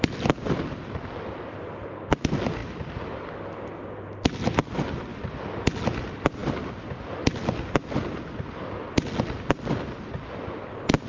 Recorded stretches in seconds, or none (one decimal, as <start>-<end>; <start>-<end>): 0.0-11.1